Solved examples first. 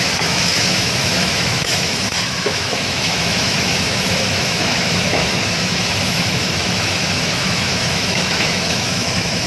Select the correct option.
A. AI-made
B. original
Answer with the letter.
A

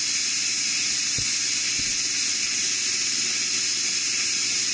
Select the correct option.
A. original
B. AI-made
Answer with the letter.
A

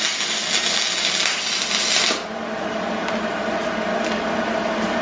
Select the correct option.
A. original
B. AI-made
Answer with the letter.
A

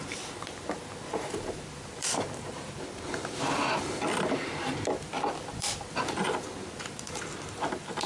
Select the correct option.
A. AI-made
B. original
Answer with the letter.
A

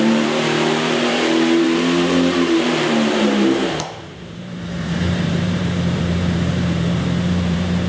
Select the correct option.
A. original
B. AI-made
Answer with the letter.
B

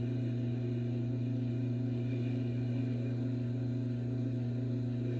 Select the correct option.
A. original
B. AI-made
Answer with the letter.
A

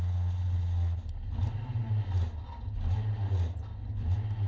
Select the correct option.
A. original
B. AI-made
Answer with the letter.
A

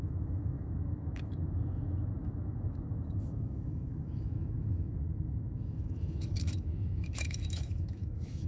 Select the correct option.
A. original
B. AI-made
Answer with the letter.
B